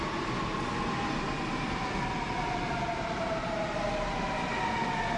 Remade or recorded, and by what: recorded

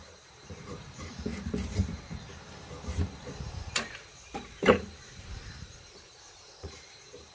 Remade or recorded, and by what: remade, vocoder, BigVGAN v2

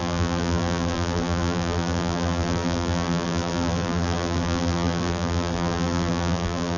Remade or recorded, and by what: remade, vocoder, BigVGAN v2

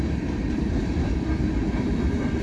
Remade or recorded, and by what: remade, vocoder, BigVGAN v2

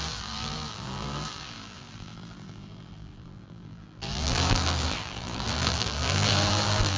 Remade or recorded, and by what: remade, vocoder, BigVGAN v2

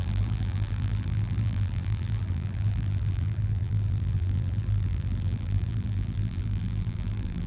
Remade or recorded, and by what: remade, vocoder, BigVGAN v2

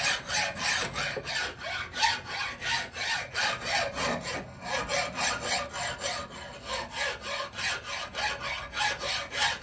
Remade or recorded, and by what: recorded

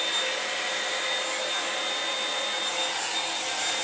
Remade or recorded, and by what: recorded